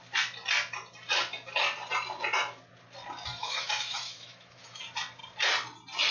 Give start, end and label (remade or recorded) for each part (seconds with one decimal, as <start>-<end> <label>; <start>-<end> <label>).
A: 0.0-3.4 recorded; 3.4-4.8 remade; 4.8-6.1 recorded